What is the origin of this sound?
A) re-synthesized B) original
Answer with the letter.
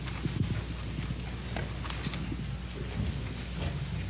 B